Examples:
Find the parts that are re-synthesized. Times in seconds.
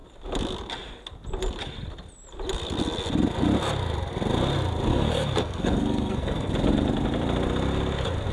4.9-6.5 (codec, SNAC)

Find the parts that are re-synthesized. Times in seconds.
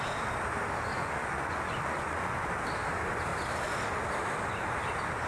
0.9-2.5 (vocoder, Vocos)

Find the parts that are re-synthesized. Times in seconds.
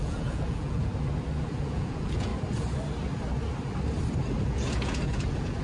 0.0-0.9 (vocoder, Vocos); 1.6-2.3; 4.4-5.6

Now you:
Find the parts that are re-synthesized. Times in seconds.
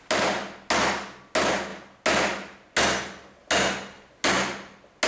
none